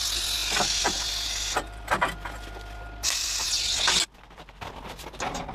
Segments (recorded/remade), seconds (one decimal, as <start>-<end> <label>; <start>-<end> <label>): 0.0-5.5 recorded